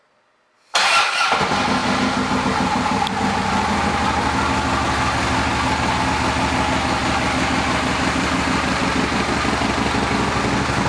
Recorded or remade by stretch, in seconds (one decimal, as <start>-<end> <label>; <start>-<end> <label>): 0.0-10.9 recorded